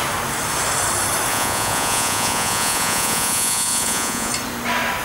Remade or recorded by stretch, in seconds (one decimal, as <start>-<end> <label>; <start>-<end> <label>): 0.0-1.3 recorded; 1.3-4.3 remade; 4.3-5.0 recorded

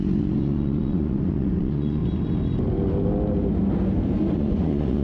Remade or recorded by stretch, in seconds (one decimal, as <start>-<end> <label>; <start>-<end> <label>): 0.0-2.0 remade; 2.0-4.3 recorded; 4.3-5.0 remade

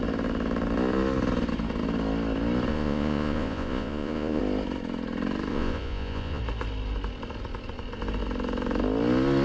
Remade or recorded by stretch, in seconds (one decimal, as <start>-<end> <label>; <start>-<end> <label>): 0.0-2.7 recorded; 2.7-4.4 remade; 4.4-5.5 recorded; 5.5-6.4 remade; 6.4-9.4 recorded